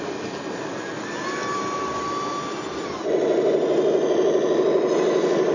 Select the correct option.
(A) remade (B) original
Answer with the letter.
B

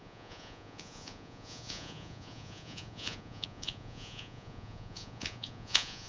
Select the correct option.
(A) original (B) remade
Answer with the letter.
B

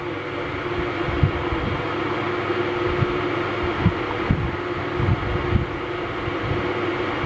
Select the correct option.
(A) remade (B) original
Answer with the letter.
B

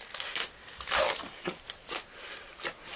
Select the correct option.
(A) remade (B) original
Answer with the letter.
B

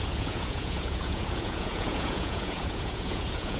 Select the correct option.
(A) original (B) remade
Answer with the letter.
B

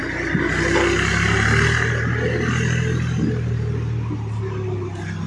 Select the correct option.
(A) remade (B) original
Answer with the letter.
B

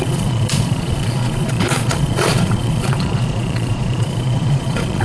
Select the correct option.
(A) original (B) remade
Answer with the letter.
B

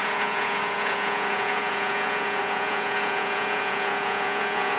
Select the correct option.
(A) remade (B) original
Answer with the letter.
A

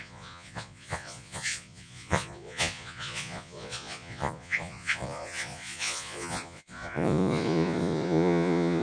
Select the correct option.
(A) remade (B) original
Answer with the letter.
A